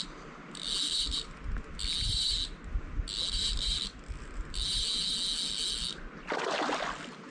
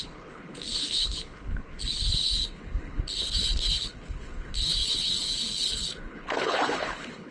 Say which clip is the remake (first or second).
second